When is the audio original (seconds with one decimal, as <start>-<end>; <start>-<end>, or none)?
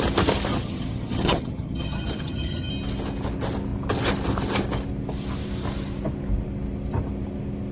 0.0-0.5; 2.7-7.7